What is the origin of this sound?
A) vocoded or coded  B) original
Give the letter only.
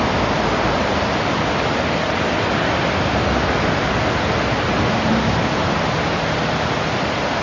B